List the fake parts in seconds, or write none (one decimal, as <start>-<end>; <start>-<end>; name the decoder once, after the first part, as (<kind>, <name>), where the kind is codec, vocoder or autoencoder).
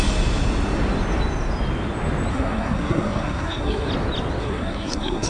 2.3-3.9 (codec, SNAC); 4.4-5.3